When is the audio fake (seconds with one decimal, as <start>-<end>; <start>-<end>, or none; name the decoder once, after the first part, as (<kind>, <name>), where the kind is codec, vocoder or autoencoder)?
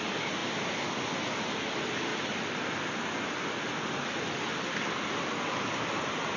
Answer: 0.0-6.4 (vocoder, BigVGAN v2)